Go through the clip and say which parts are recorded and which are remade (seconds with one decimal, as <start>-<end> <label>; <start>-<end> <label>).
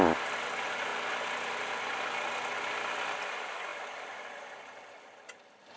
0.0-5.8 recorded